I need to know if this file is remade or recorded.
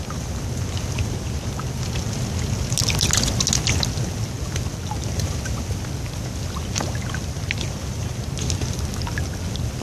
recorded